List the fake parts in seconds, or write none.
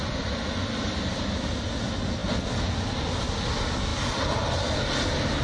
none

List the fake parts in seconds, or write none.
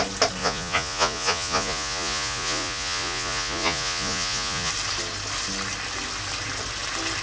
0.4-4.7 (vocoder, Vocos)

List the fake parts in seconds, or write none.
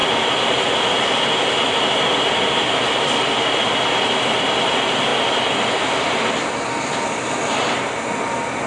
none